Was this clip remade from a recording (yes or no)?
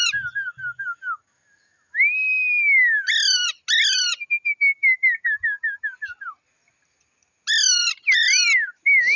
no